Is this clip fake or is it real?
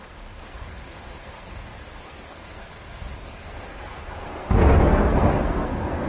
fake